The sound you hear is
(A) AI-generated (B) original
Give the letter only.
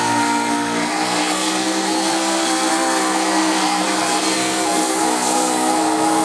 A